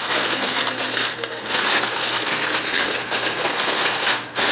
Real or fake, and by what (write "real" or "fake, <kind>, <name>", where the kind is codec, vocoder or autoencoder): fake, codec, SNAC